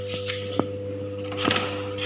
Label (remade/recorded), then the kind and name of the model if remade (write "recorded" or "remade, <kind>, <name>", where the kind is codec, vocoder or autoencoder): remade, vocoder, BigVGAN v2